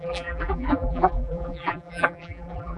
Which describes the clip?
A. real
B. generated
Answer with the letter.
B